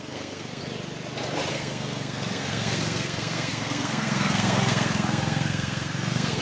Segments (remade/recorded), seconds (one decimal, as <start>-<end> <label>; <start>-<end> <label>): 0.0-0.6 remade; 0.6-1.5 recorded; 1.5-6.4 remade

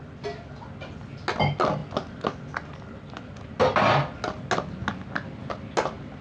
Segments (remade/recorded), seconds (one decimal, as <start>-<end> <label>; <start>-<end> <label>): 0.0-6.2 recorded